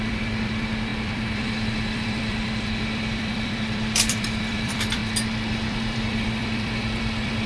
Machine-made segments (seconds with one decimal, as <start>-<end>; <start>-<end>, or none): 0.0-5.0; 5.5-7.5